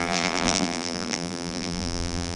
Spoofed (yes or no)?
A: yes